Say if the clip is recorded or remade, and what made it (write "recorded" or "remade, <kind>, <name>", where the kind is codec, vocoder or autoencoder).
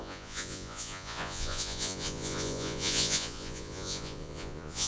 remade, vocoder, Vocos